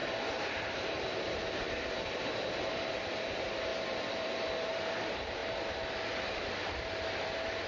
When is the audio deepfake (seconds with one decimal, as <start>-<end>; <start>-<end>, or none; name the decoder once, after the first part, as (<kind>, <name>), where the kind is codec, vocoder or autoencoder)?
0.5-5.4 (vocoder, BigVGAN v2); 6.4-7.7